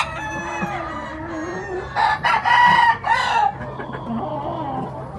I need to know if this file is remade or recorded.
recorded